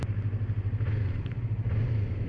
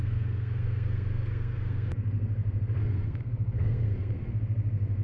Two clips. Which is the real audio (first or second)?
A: first